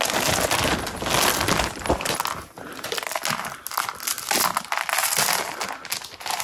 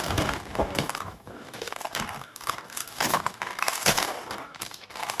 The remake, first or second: second